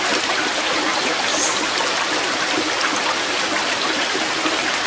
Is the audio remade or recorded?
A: recorded